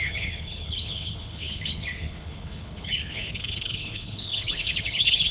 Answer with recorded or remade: remade